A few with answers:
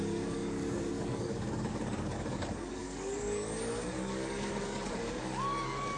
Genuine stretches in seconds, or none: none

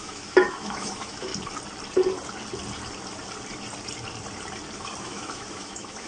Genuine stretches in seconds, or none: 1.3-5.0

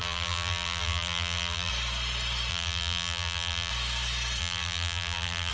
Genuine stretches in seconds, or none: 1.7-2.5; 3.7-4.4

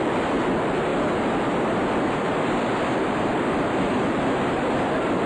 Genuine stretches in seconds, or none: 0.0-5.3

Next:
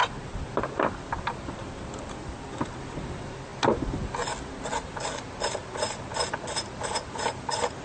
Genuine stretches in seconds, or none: 3.5-6.3

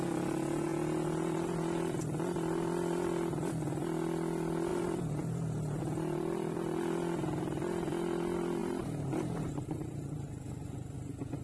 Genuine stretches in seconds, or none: 0.0-4.7; 5.8-8.6; 10.3-11.4

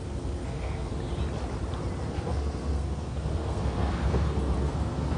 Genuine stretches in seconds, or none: 0.9-2.1